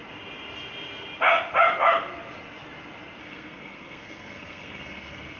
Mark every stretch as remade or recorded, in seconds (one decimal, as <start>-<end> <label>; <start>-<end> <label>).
0.0-3.2 recorded; 3.2-5.4 remade